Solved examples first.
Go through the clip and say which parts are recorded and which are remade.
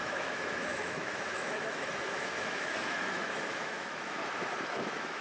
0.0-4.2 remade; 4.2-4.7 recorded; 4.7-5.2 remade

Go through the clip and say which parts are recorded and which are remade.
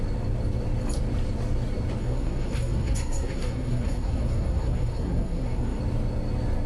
0.0-2.0 recorded; 2.0-5.8 remade; 5.8-6.7 recorded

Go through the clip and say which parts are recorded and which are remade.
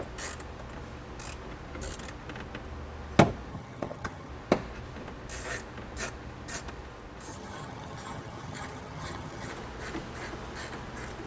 0.0-3.5 recorded; 3.5-4.3 remade; 4.3-7.3 recorded; 7.3-9.5 remade; 9.5-11.3 recorded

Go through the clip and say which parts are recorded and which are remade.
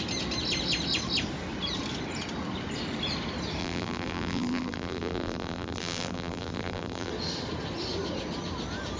0.0-3.6 recorded; 3.6-7.1 remade; 7.1-9.0 recorded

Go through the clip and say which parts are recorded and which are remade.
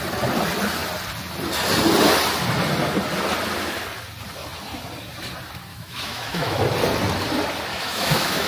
0.0-5.7 recorded; 5.7-6.6 remade; 6.6-7.7 recorded; 7.7-8.5 remade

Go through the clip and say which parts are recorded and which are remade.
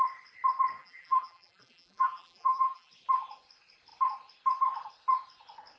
0.0-0.8 recorded; 0.8-2.9 remade; 2.9-5.8 recorded